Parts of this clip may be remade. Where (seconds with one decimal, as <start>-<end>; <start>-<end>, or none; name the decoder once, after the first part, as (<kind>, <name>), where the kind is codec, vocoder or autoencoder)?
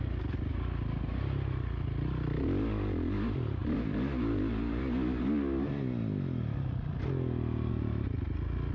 none